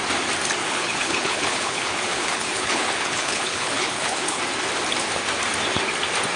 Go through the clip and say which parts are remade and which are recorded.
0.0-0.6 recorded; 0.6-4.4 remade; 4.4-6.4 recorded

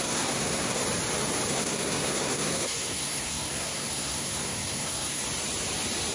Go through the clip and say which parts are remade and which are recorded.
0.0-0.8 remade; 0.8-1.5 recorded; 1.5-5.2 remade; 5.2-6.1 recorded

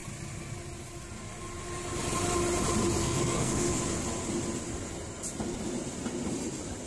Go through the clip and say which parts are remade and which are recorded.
0.0-3.0 recorded; 3.0-3.8 remade; 3.8-6.9 recorded

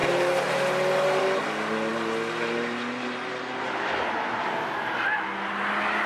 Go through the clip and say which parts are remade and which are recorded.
0.0-6.1 recorded

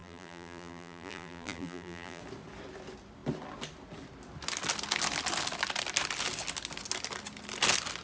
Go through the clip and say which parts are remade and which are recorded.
0.0-2.2 remade; 2.2-8.0 recorded

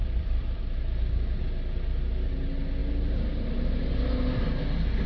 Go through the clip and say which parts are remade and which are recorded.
0.0-0.6 remade; 0.6-5.1 recorded